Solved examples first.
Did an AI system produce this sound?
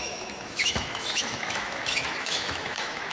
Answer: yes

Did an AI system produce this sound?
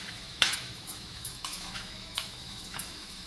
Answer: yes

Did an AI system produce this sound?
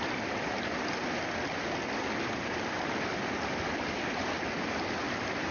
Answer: no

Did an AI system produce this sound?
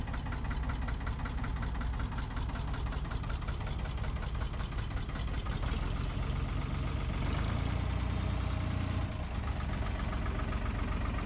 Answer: no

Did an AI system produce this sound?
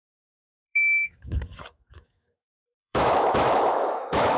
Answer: yes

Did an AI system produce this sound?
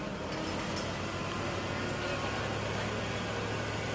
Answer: no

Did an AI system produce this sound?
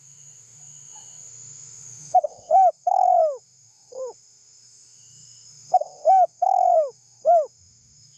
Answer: yes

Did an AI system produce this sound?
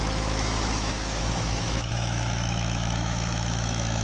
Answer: yes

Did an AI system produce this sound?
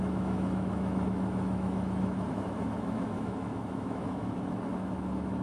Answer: yes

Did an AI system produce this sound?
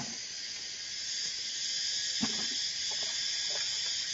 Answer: no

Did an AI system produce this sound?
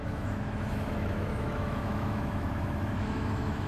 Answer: yes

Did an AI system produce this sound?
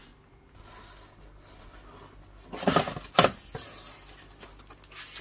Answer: no